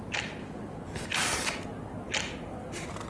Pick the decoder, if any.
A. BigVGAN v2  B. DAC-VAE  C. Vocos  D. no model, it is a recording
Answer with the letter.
D